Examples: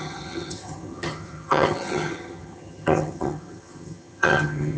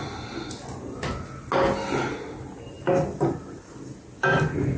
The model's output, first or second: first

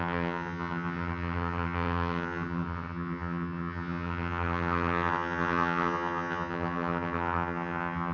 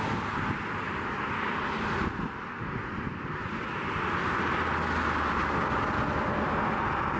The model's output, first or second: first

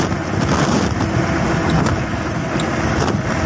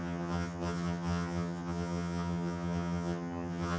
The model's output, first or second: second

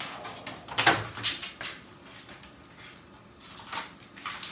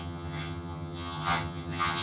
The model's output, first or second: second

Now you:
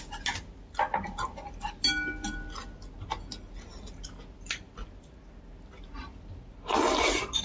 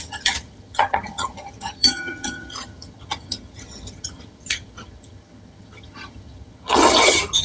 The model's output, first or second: second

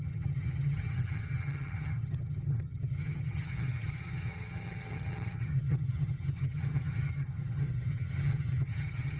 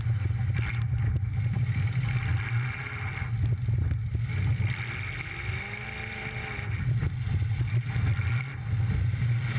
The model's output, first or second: first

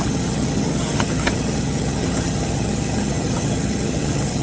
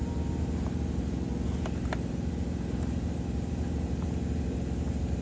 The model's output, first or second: first